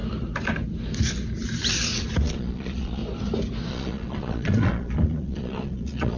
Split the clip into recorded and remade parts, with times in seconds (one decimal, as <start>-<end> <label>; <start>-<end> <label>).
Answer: 0.0-2.2 recorded; 2.2-3.0 remade; 3.0-3.7 recorded; 3.7-6.2 remade